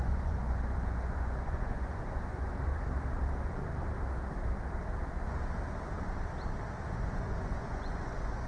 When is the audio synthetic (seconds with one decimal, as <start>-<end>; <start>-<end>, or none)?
0.0-2.7; 6.9-8.5